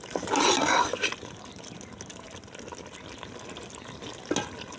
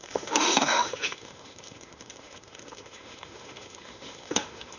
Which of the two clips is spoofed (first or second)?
second